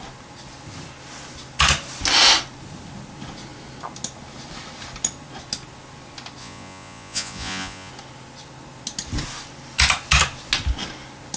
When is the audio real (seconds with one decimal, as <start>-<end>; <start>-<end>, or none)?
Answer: 0.0-6.4; 7.9-11.4